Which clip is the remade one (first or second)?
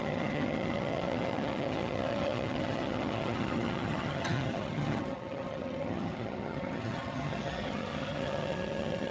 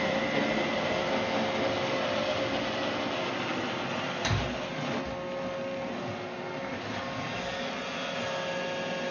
first